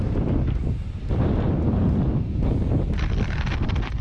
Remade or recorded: recorded